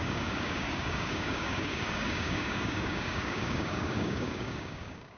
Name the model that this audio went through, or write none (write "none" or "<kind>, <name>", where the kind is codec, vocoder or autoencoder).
codec, DAC